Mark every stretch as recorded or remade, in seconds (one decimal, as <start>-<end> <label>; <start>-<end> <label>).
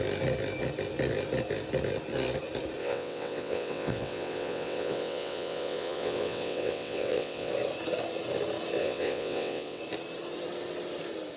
0.0-2.8 recorded; 2.8-7.5 remade; 7.5-8.8 recorded; 8.8-9.8 remade; 9.8-11.4 recorded